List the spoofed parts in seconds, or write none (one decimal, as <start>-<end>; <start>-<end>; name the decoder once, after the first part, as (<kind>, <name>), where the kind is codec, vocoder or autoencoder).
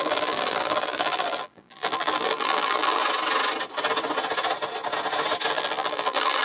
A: 0.0-3.0 (vocoder, BigVGAN v2); 5.5-6.4